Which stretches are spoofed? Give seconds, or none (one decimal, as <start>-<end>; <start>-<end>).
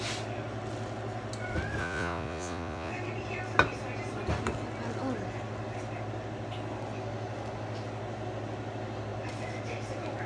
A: 1.8-2.9